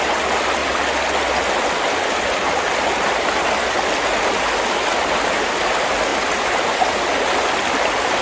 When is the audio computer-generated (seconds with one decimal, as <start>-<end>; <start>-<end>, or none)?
6.1-7.0